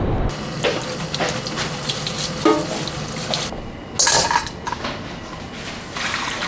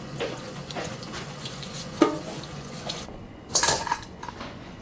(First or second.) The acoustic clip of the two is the first